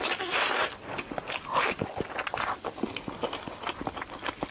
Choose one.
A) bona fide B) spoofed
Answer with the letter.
A